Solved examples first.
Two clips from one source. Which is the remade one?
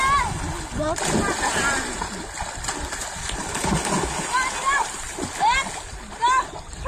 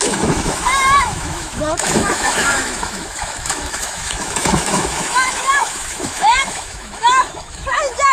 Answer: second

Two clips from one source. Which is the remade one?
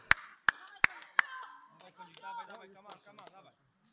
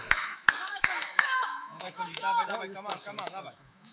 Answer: second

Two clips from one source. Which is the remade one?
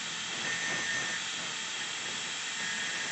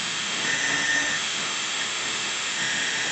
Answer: second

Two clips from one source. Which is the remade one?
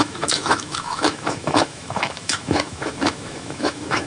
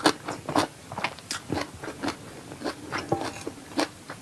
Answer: first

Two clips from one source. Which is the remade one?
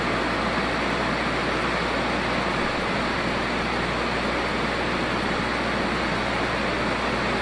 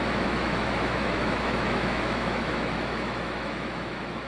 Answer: second